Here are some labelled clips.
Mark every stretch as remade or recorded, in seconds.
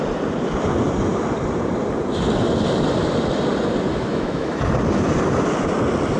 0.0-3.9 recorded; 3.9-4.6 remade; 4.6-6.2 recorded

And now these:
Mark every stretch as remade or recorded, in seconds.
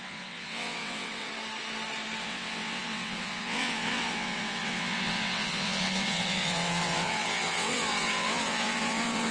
0.0-1.3 remade; 1.3-2.2 recorded; 2.2-9.3 remade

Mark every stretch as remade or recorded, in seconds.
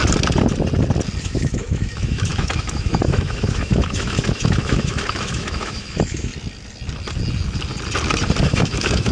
0.0-1.2 recorded; 1.2-6.3 remade; 6.3-8.4 recorded; 8.4-9.1 remade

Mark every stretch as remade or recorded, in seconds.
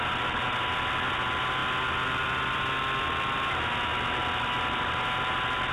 0.0-5.7 recorded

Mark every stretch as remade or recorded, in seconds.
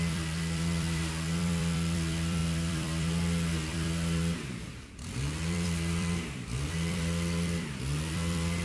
0.0-8.6 remade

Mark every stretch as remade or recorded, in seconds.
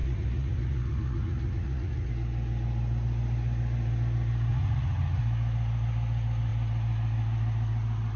0.0-2.1 remade; 2.1-4.5 recorded; 4.5-5.2 remade; 5.2-8.2 recorded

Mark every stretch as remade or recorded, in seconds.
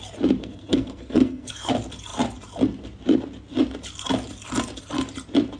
0.0-0.4 recorded; 0.4-1.7 remade; 1.7-5.6 recorded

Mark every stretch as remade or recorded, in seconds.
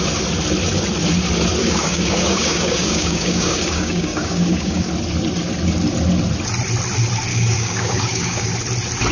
0.0-1.6 recorded; 1.6-4.9 remade; 4.9-7.3 recorded; 7.3-8.5 remade; 8.5-9.1 recorded